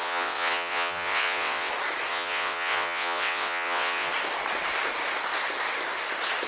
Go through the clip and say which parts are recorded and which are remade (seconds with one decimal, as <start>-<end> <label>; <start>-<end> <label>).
0.0-1.7 remade; 1.7-2.1 recorded; 2.1-4.1 remade; 4.1-6.5 recorded